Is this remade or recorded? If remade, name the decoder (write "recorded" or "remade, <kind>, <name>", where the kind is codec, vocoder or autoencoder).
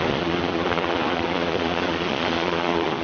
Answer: remade, vocoder, Vocos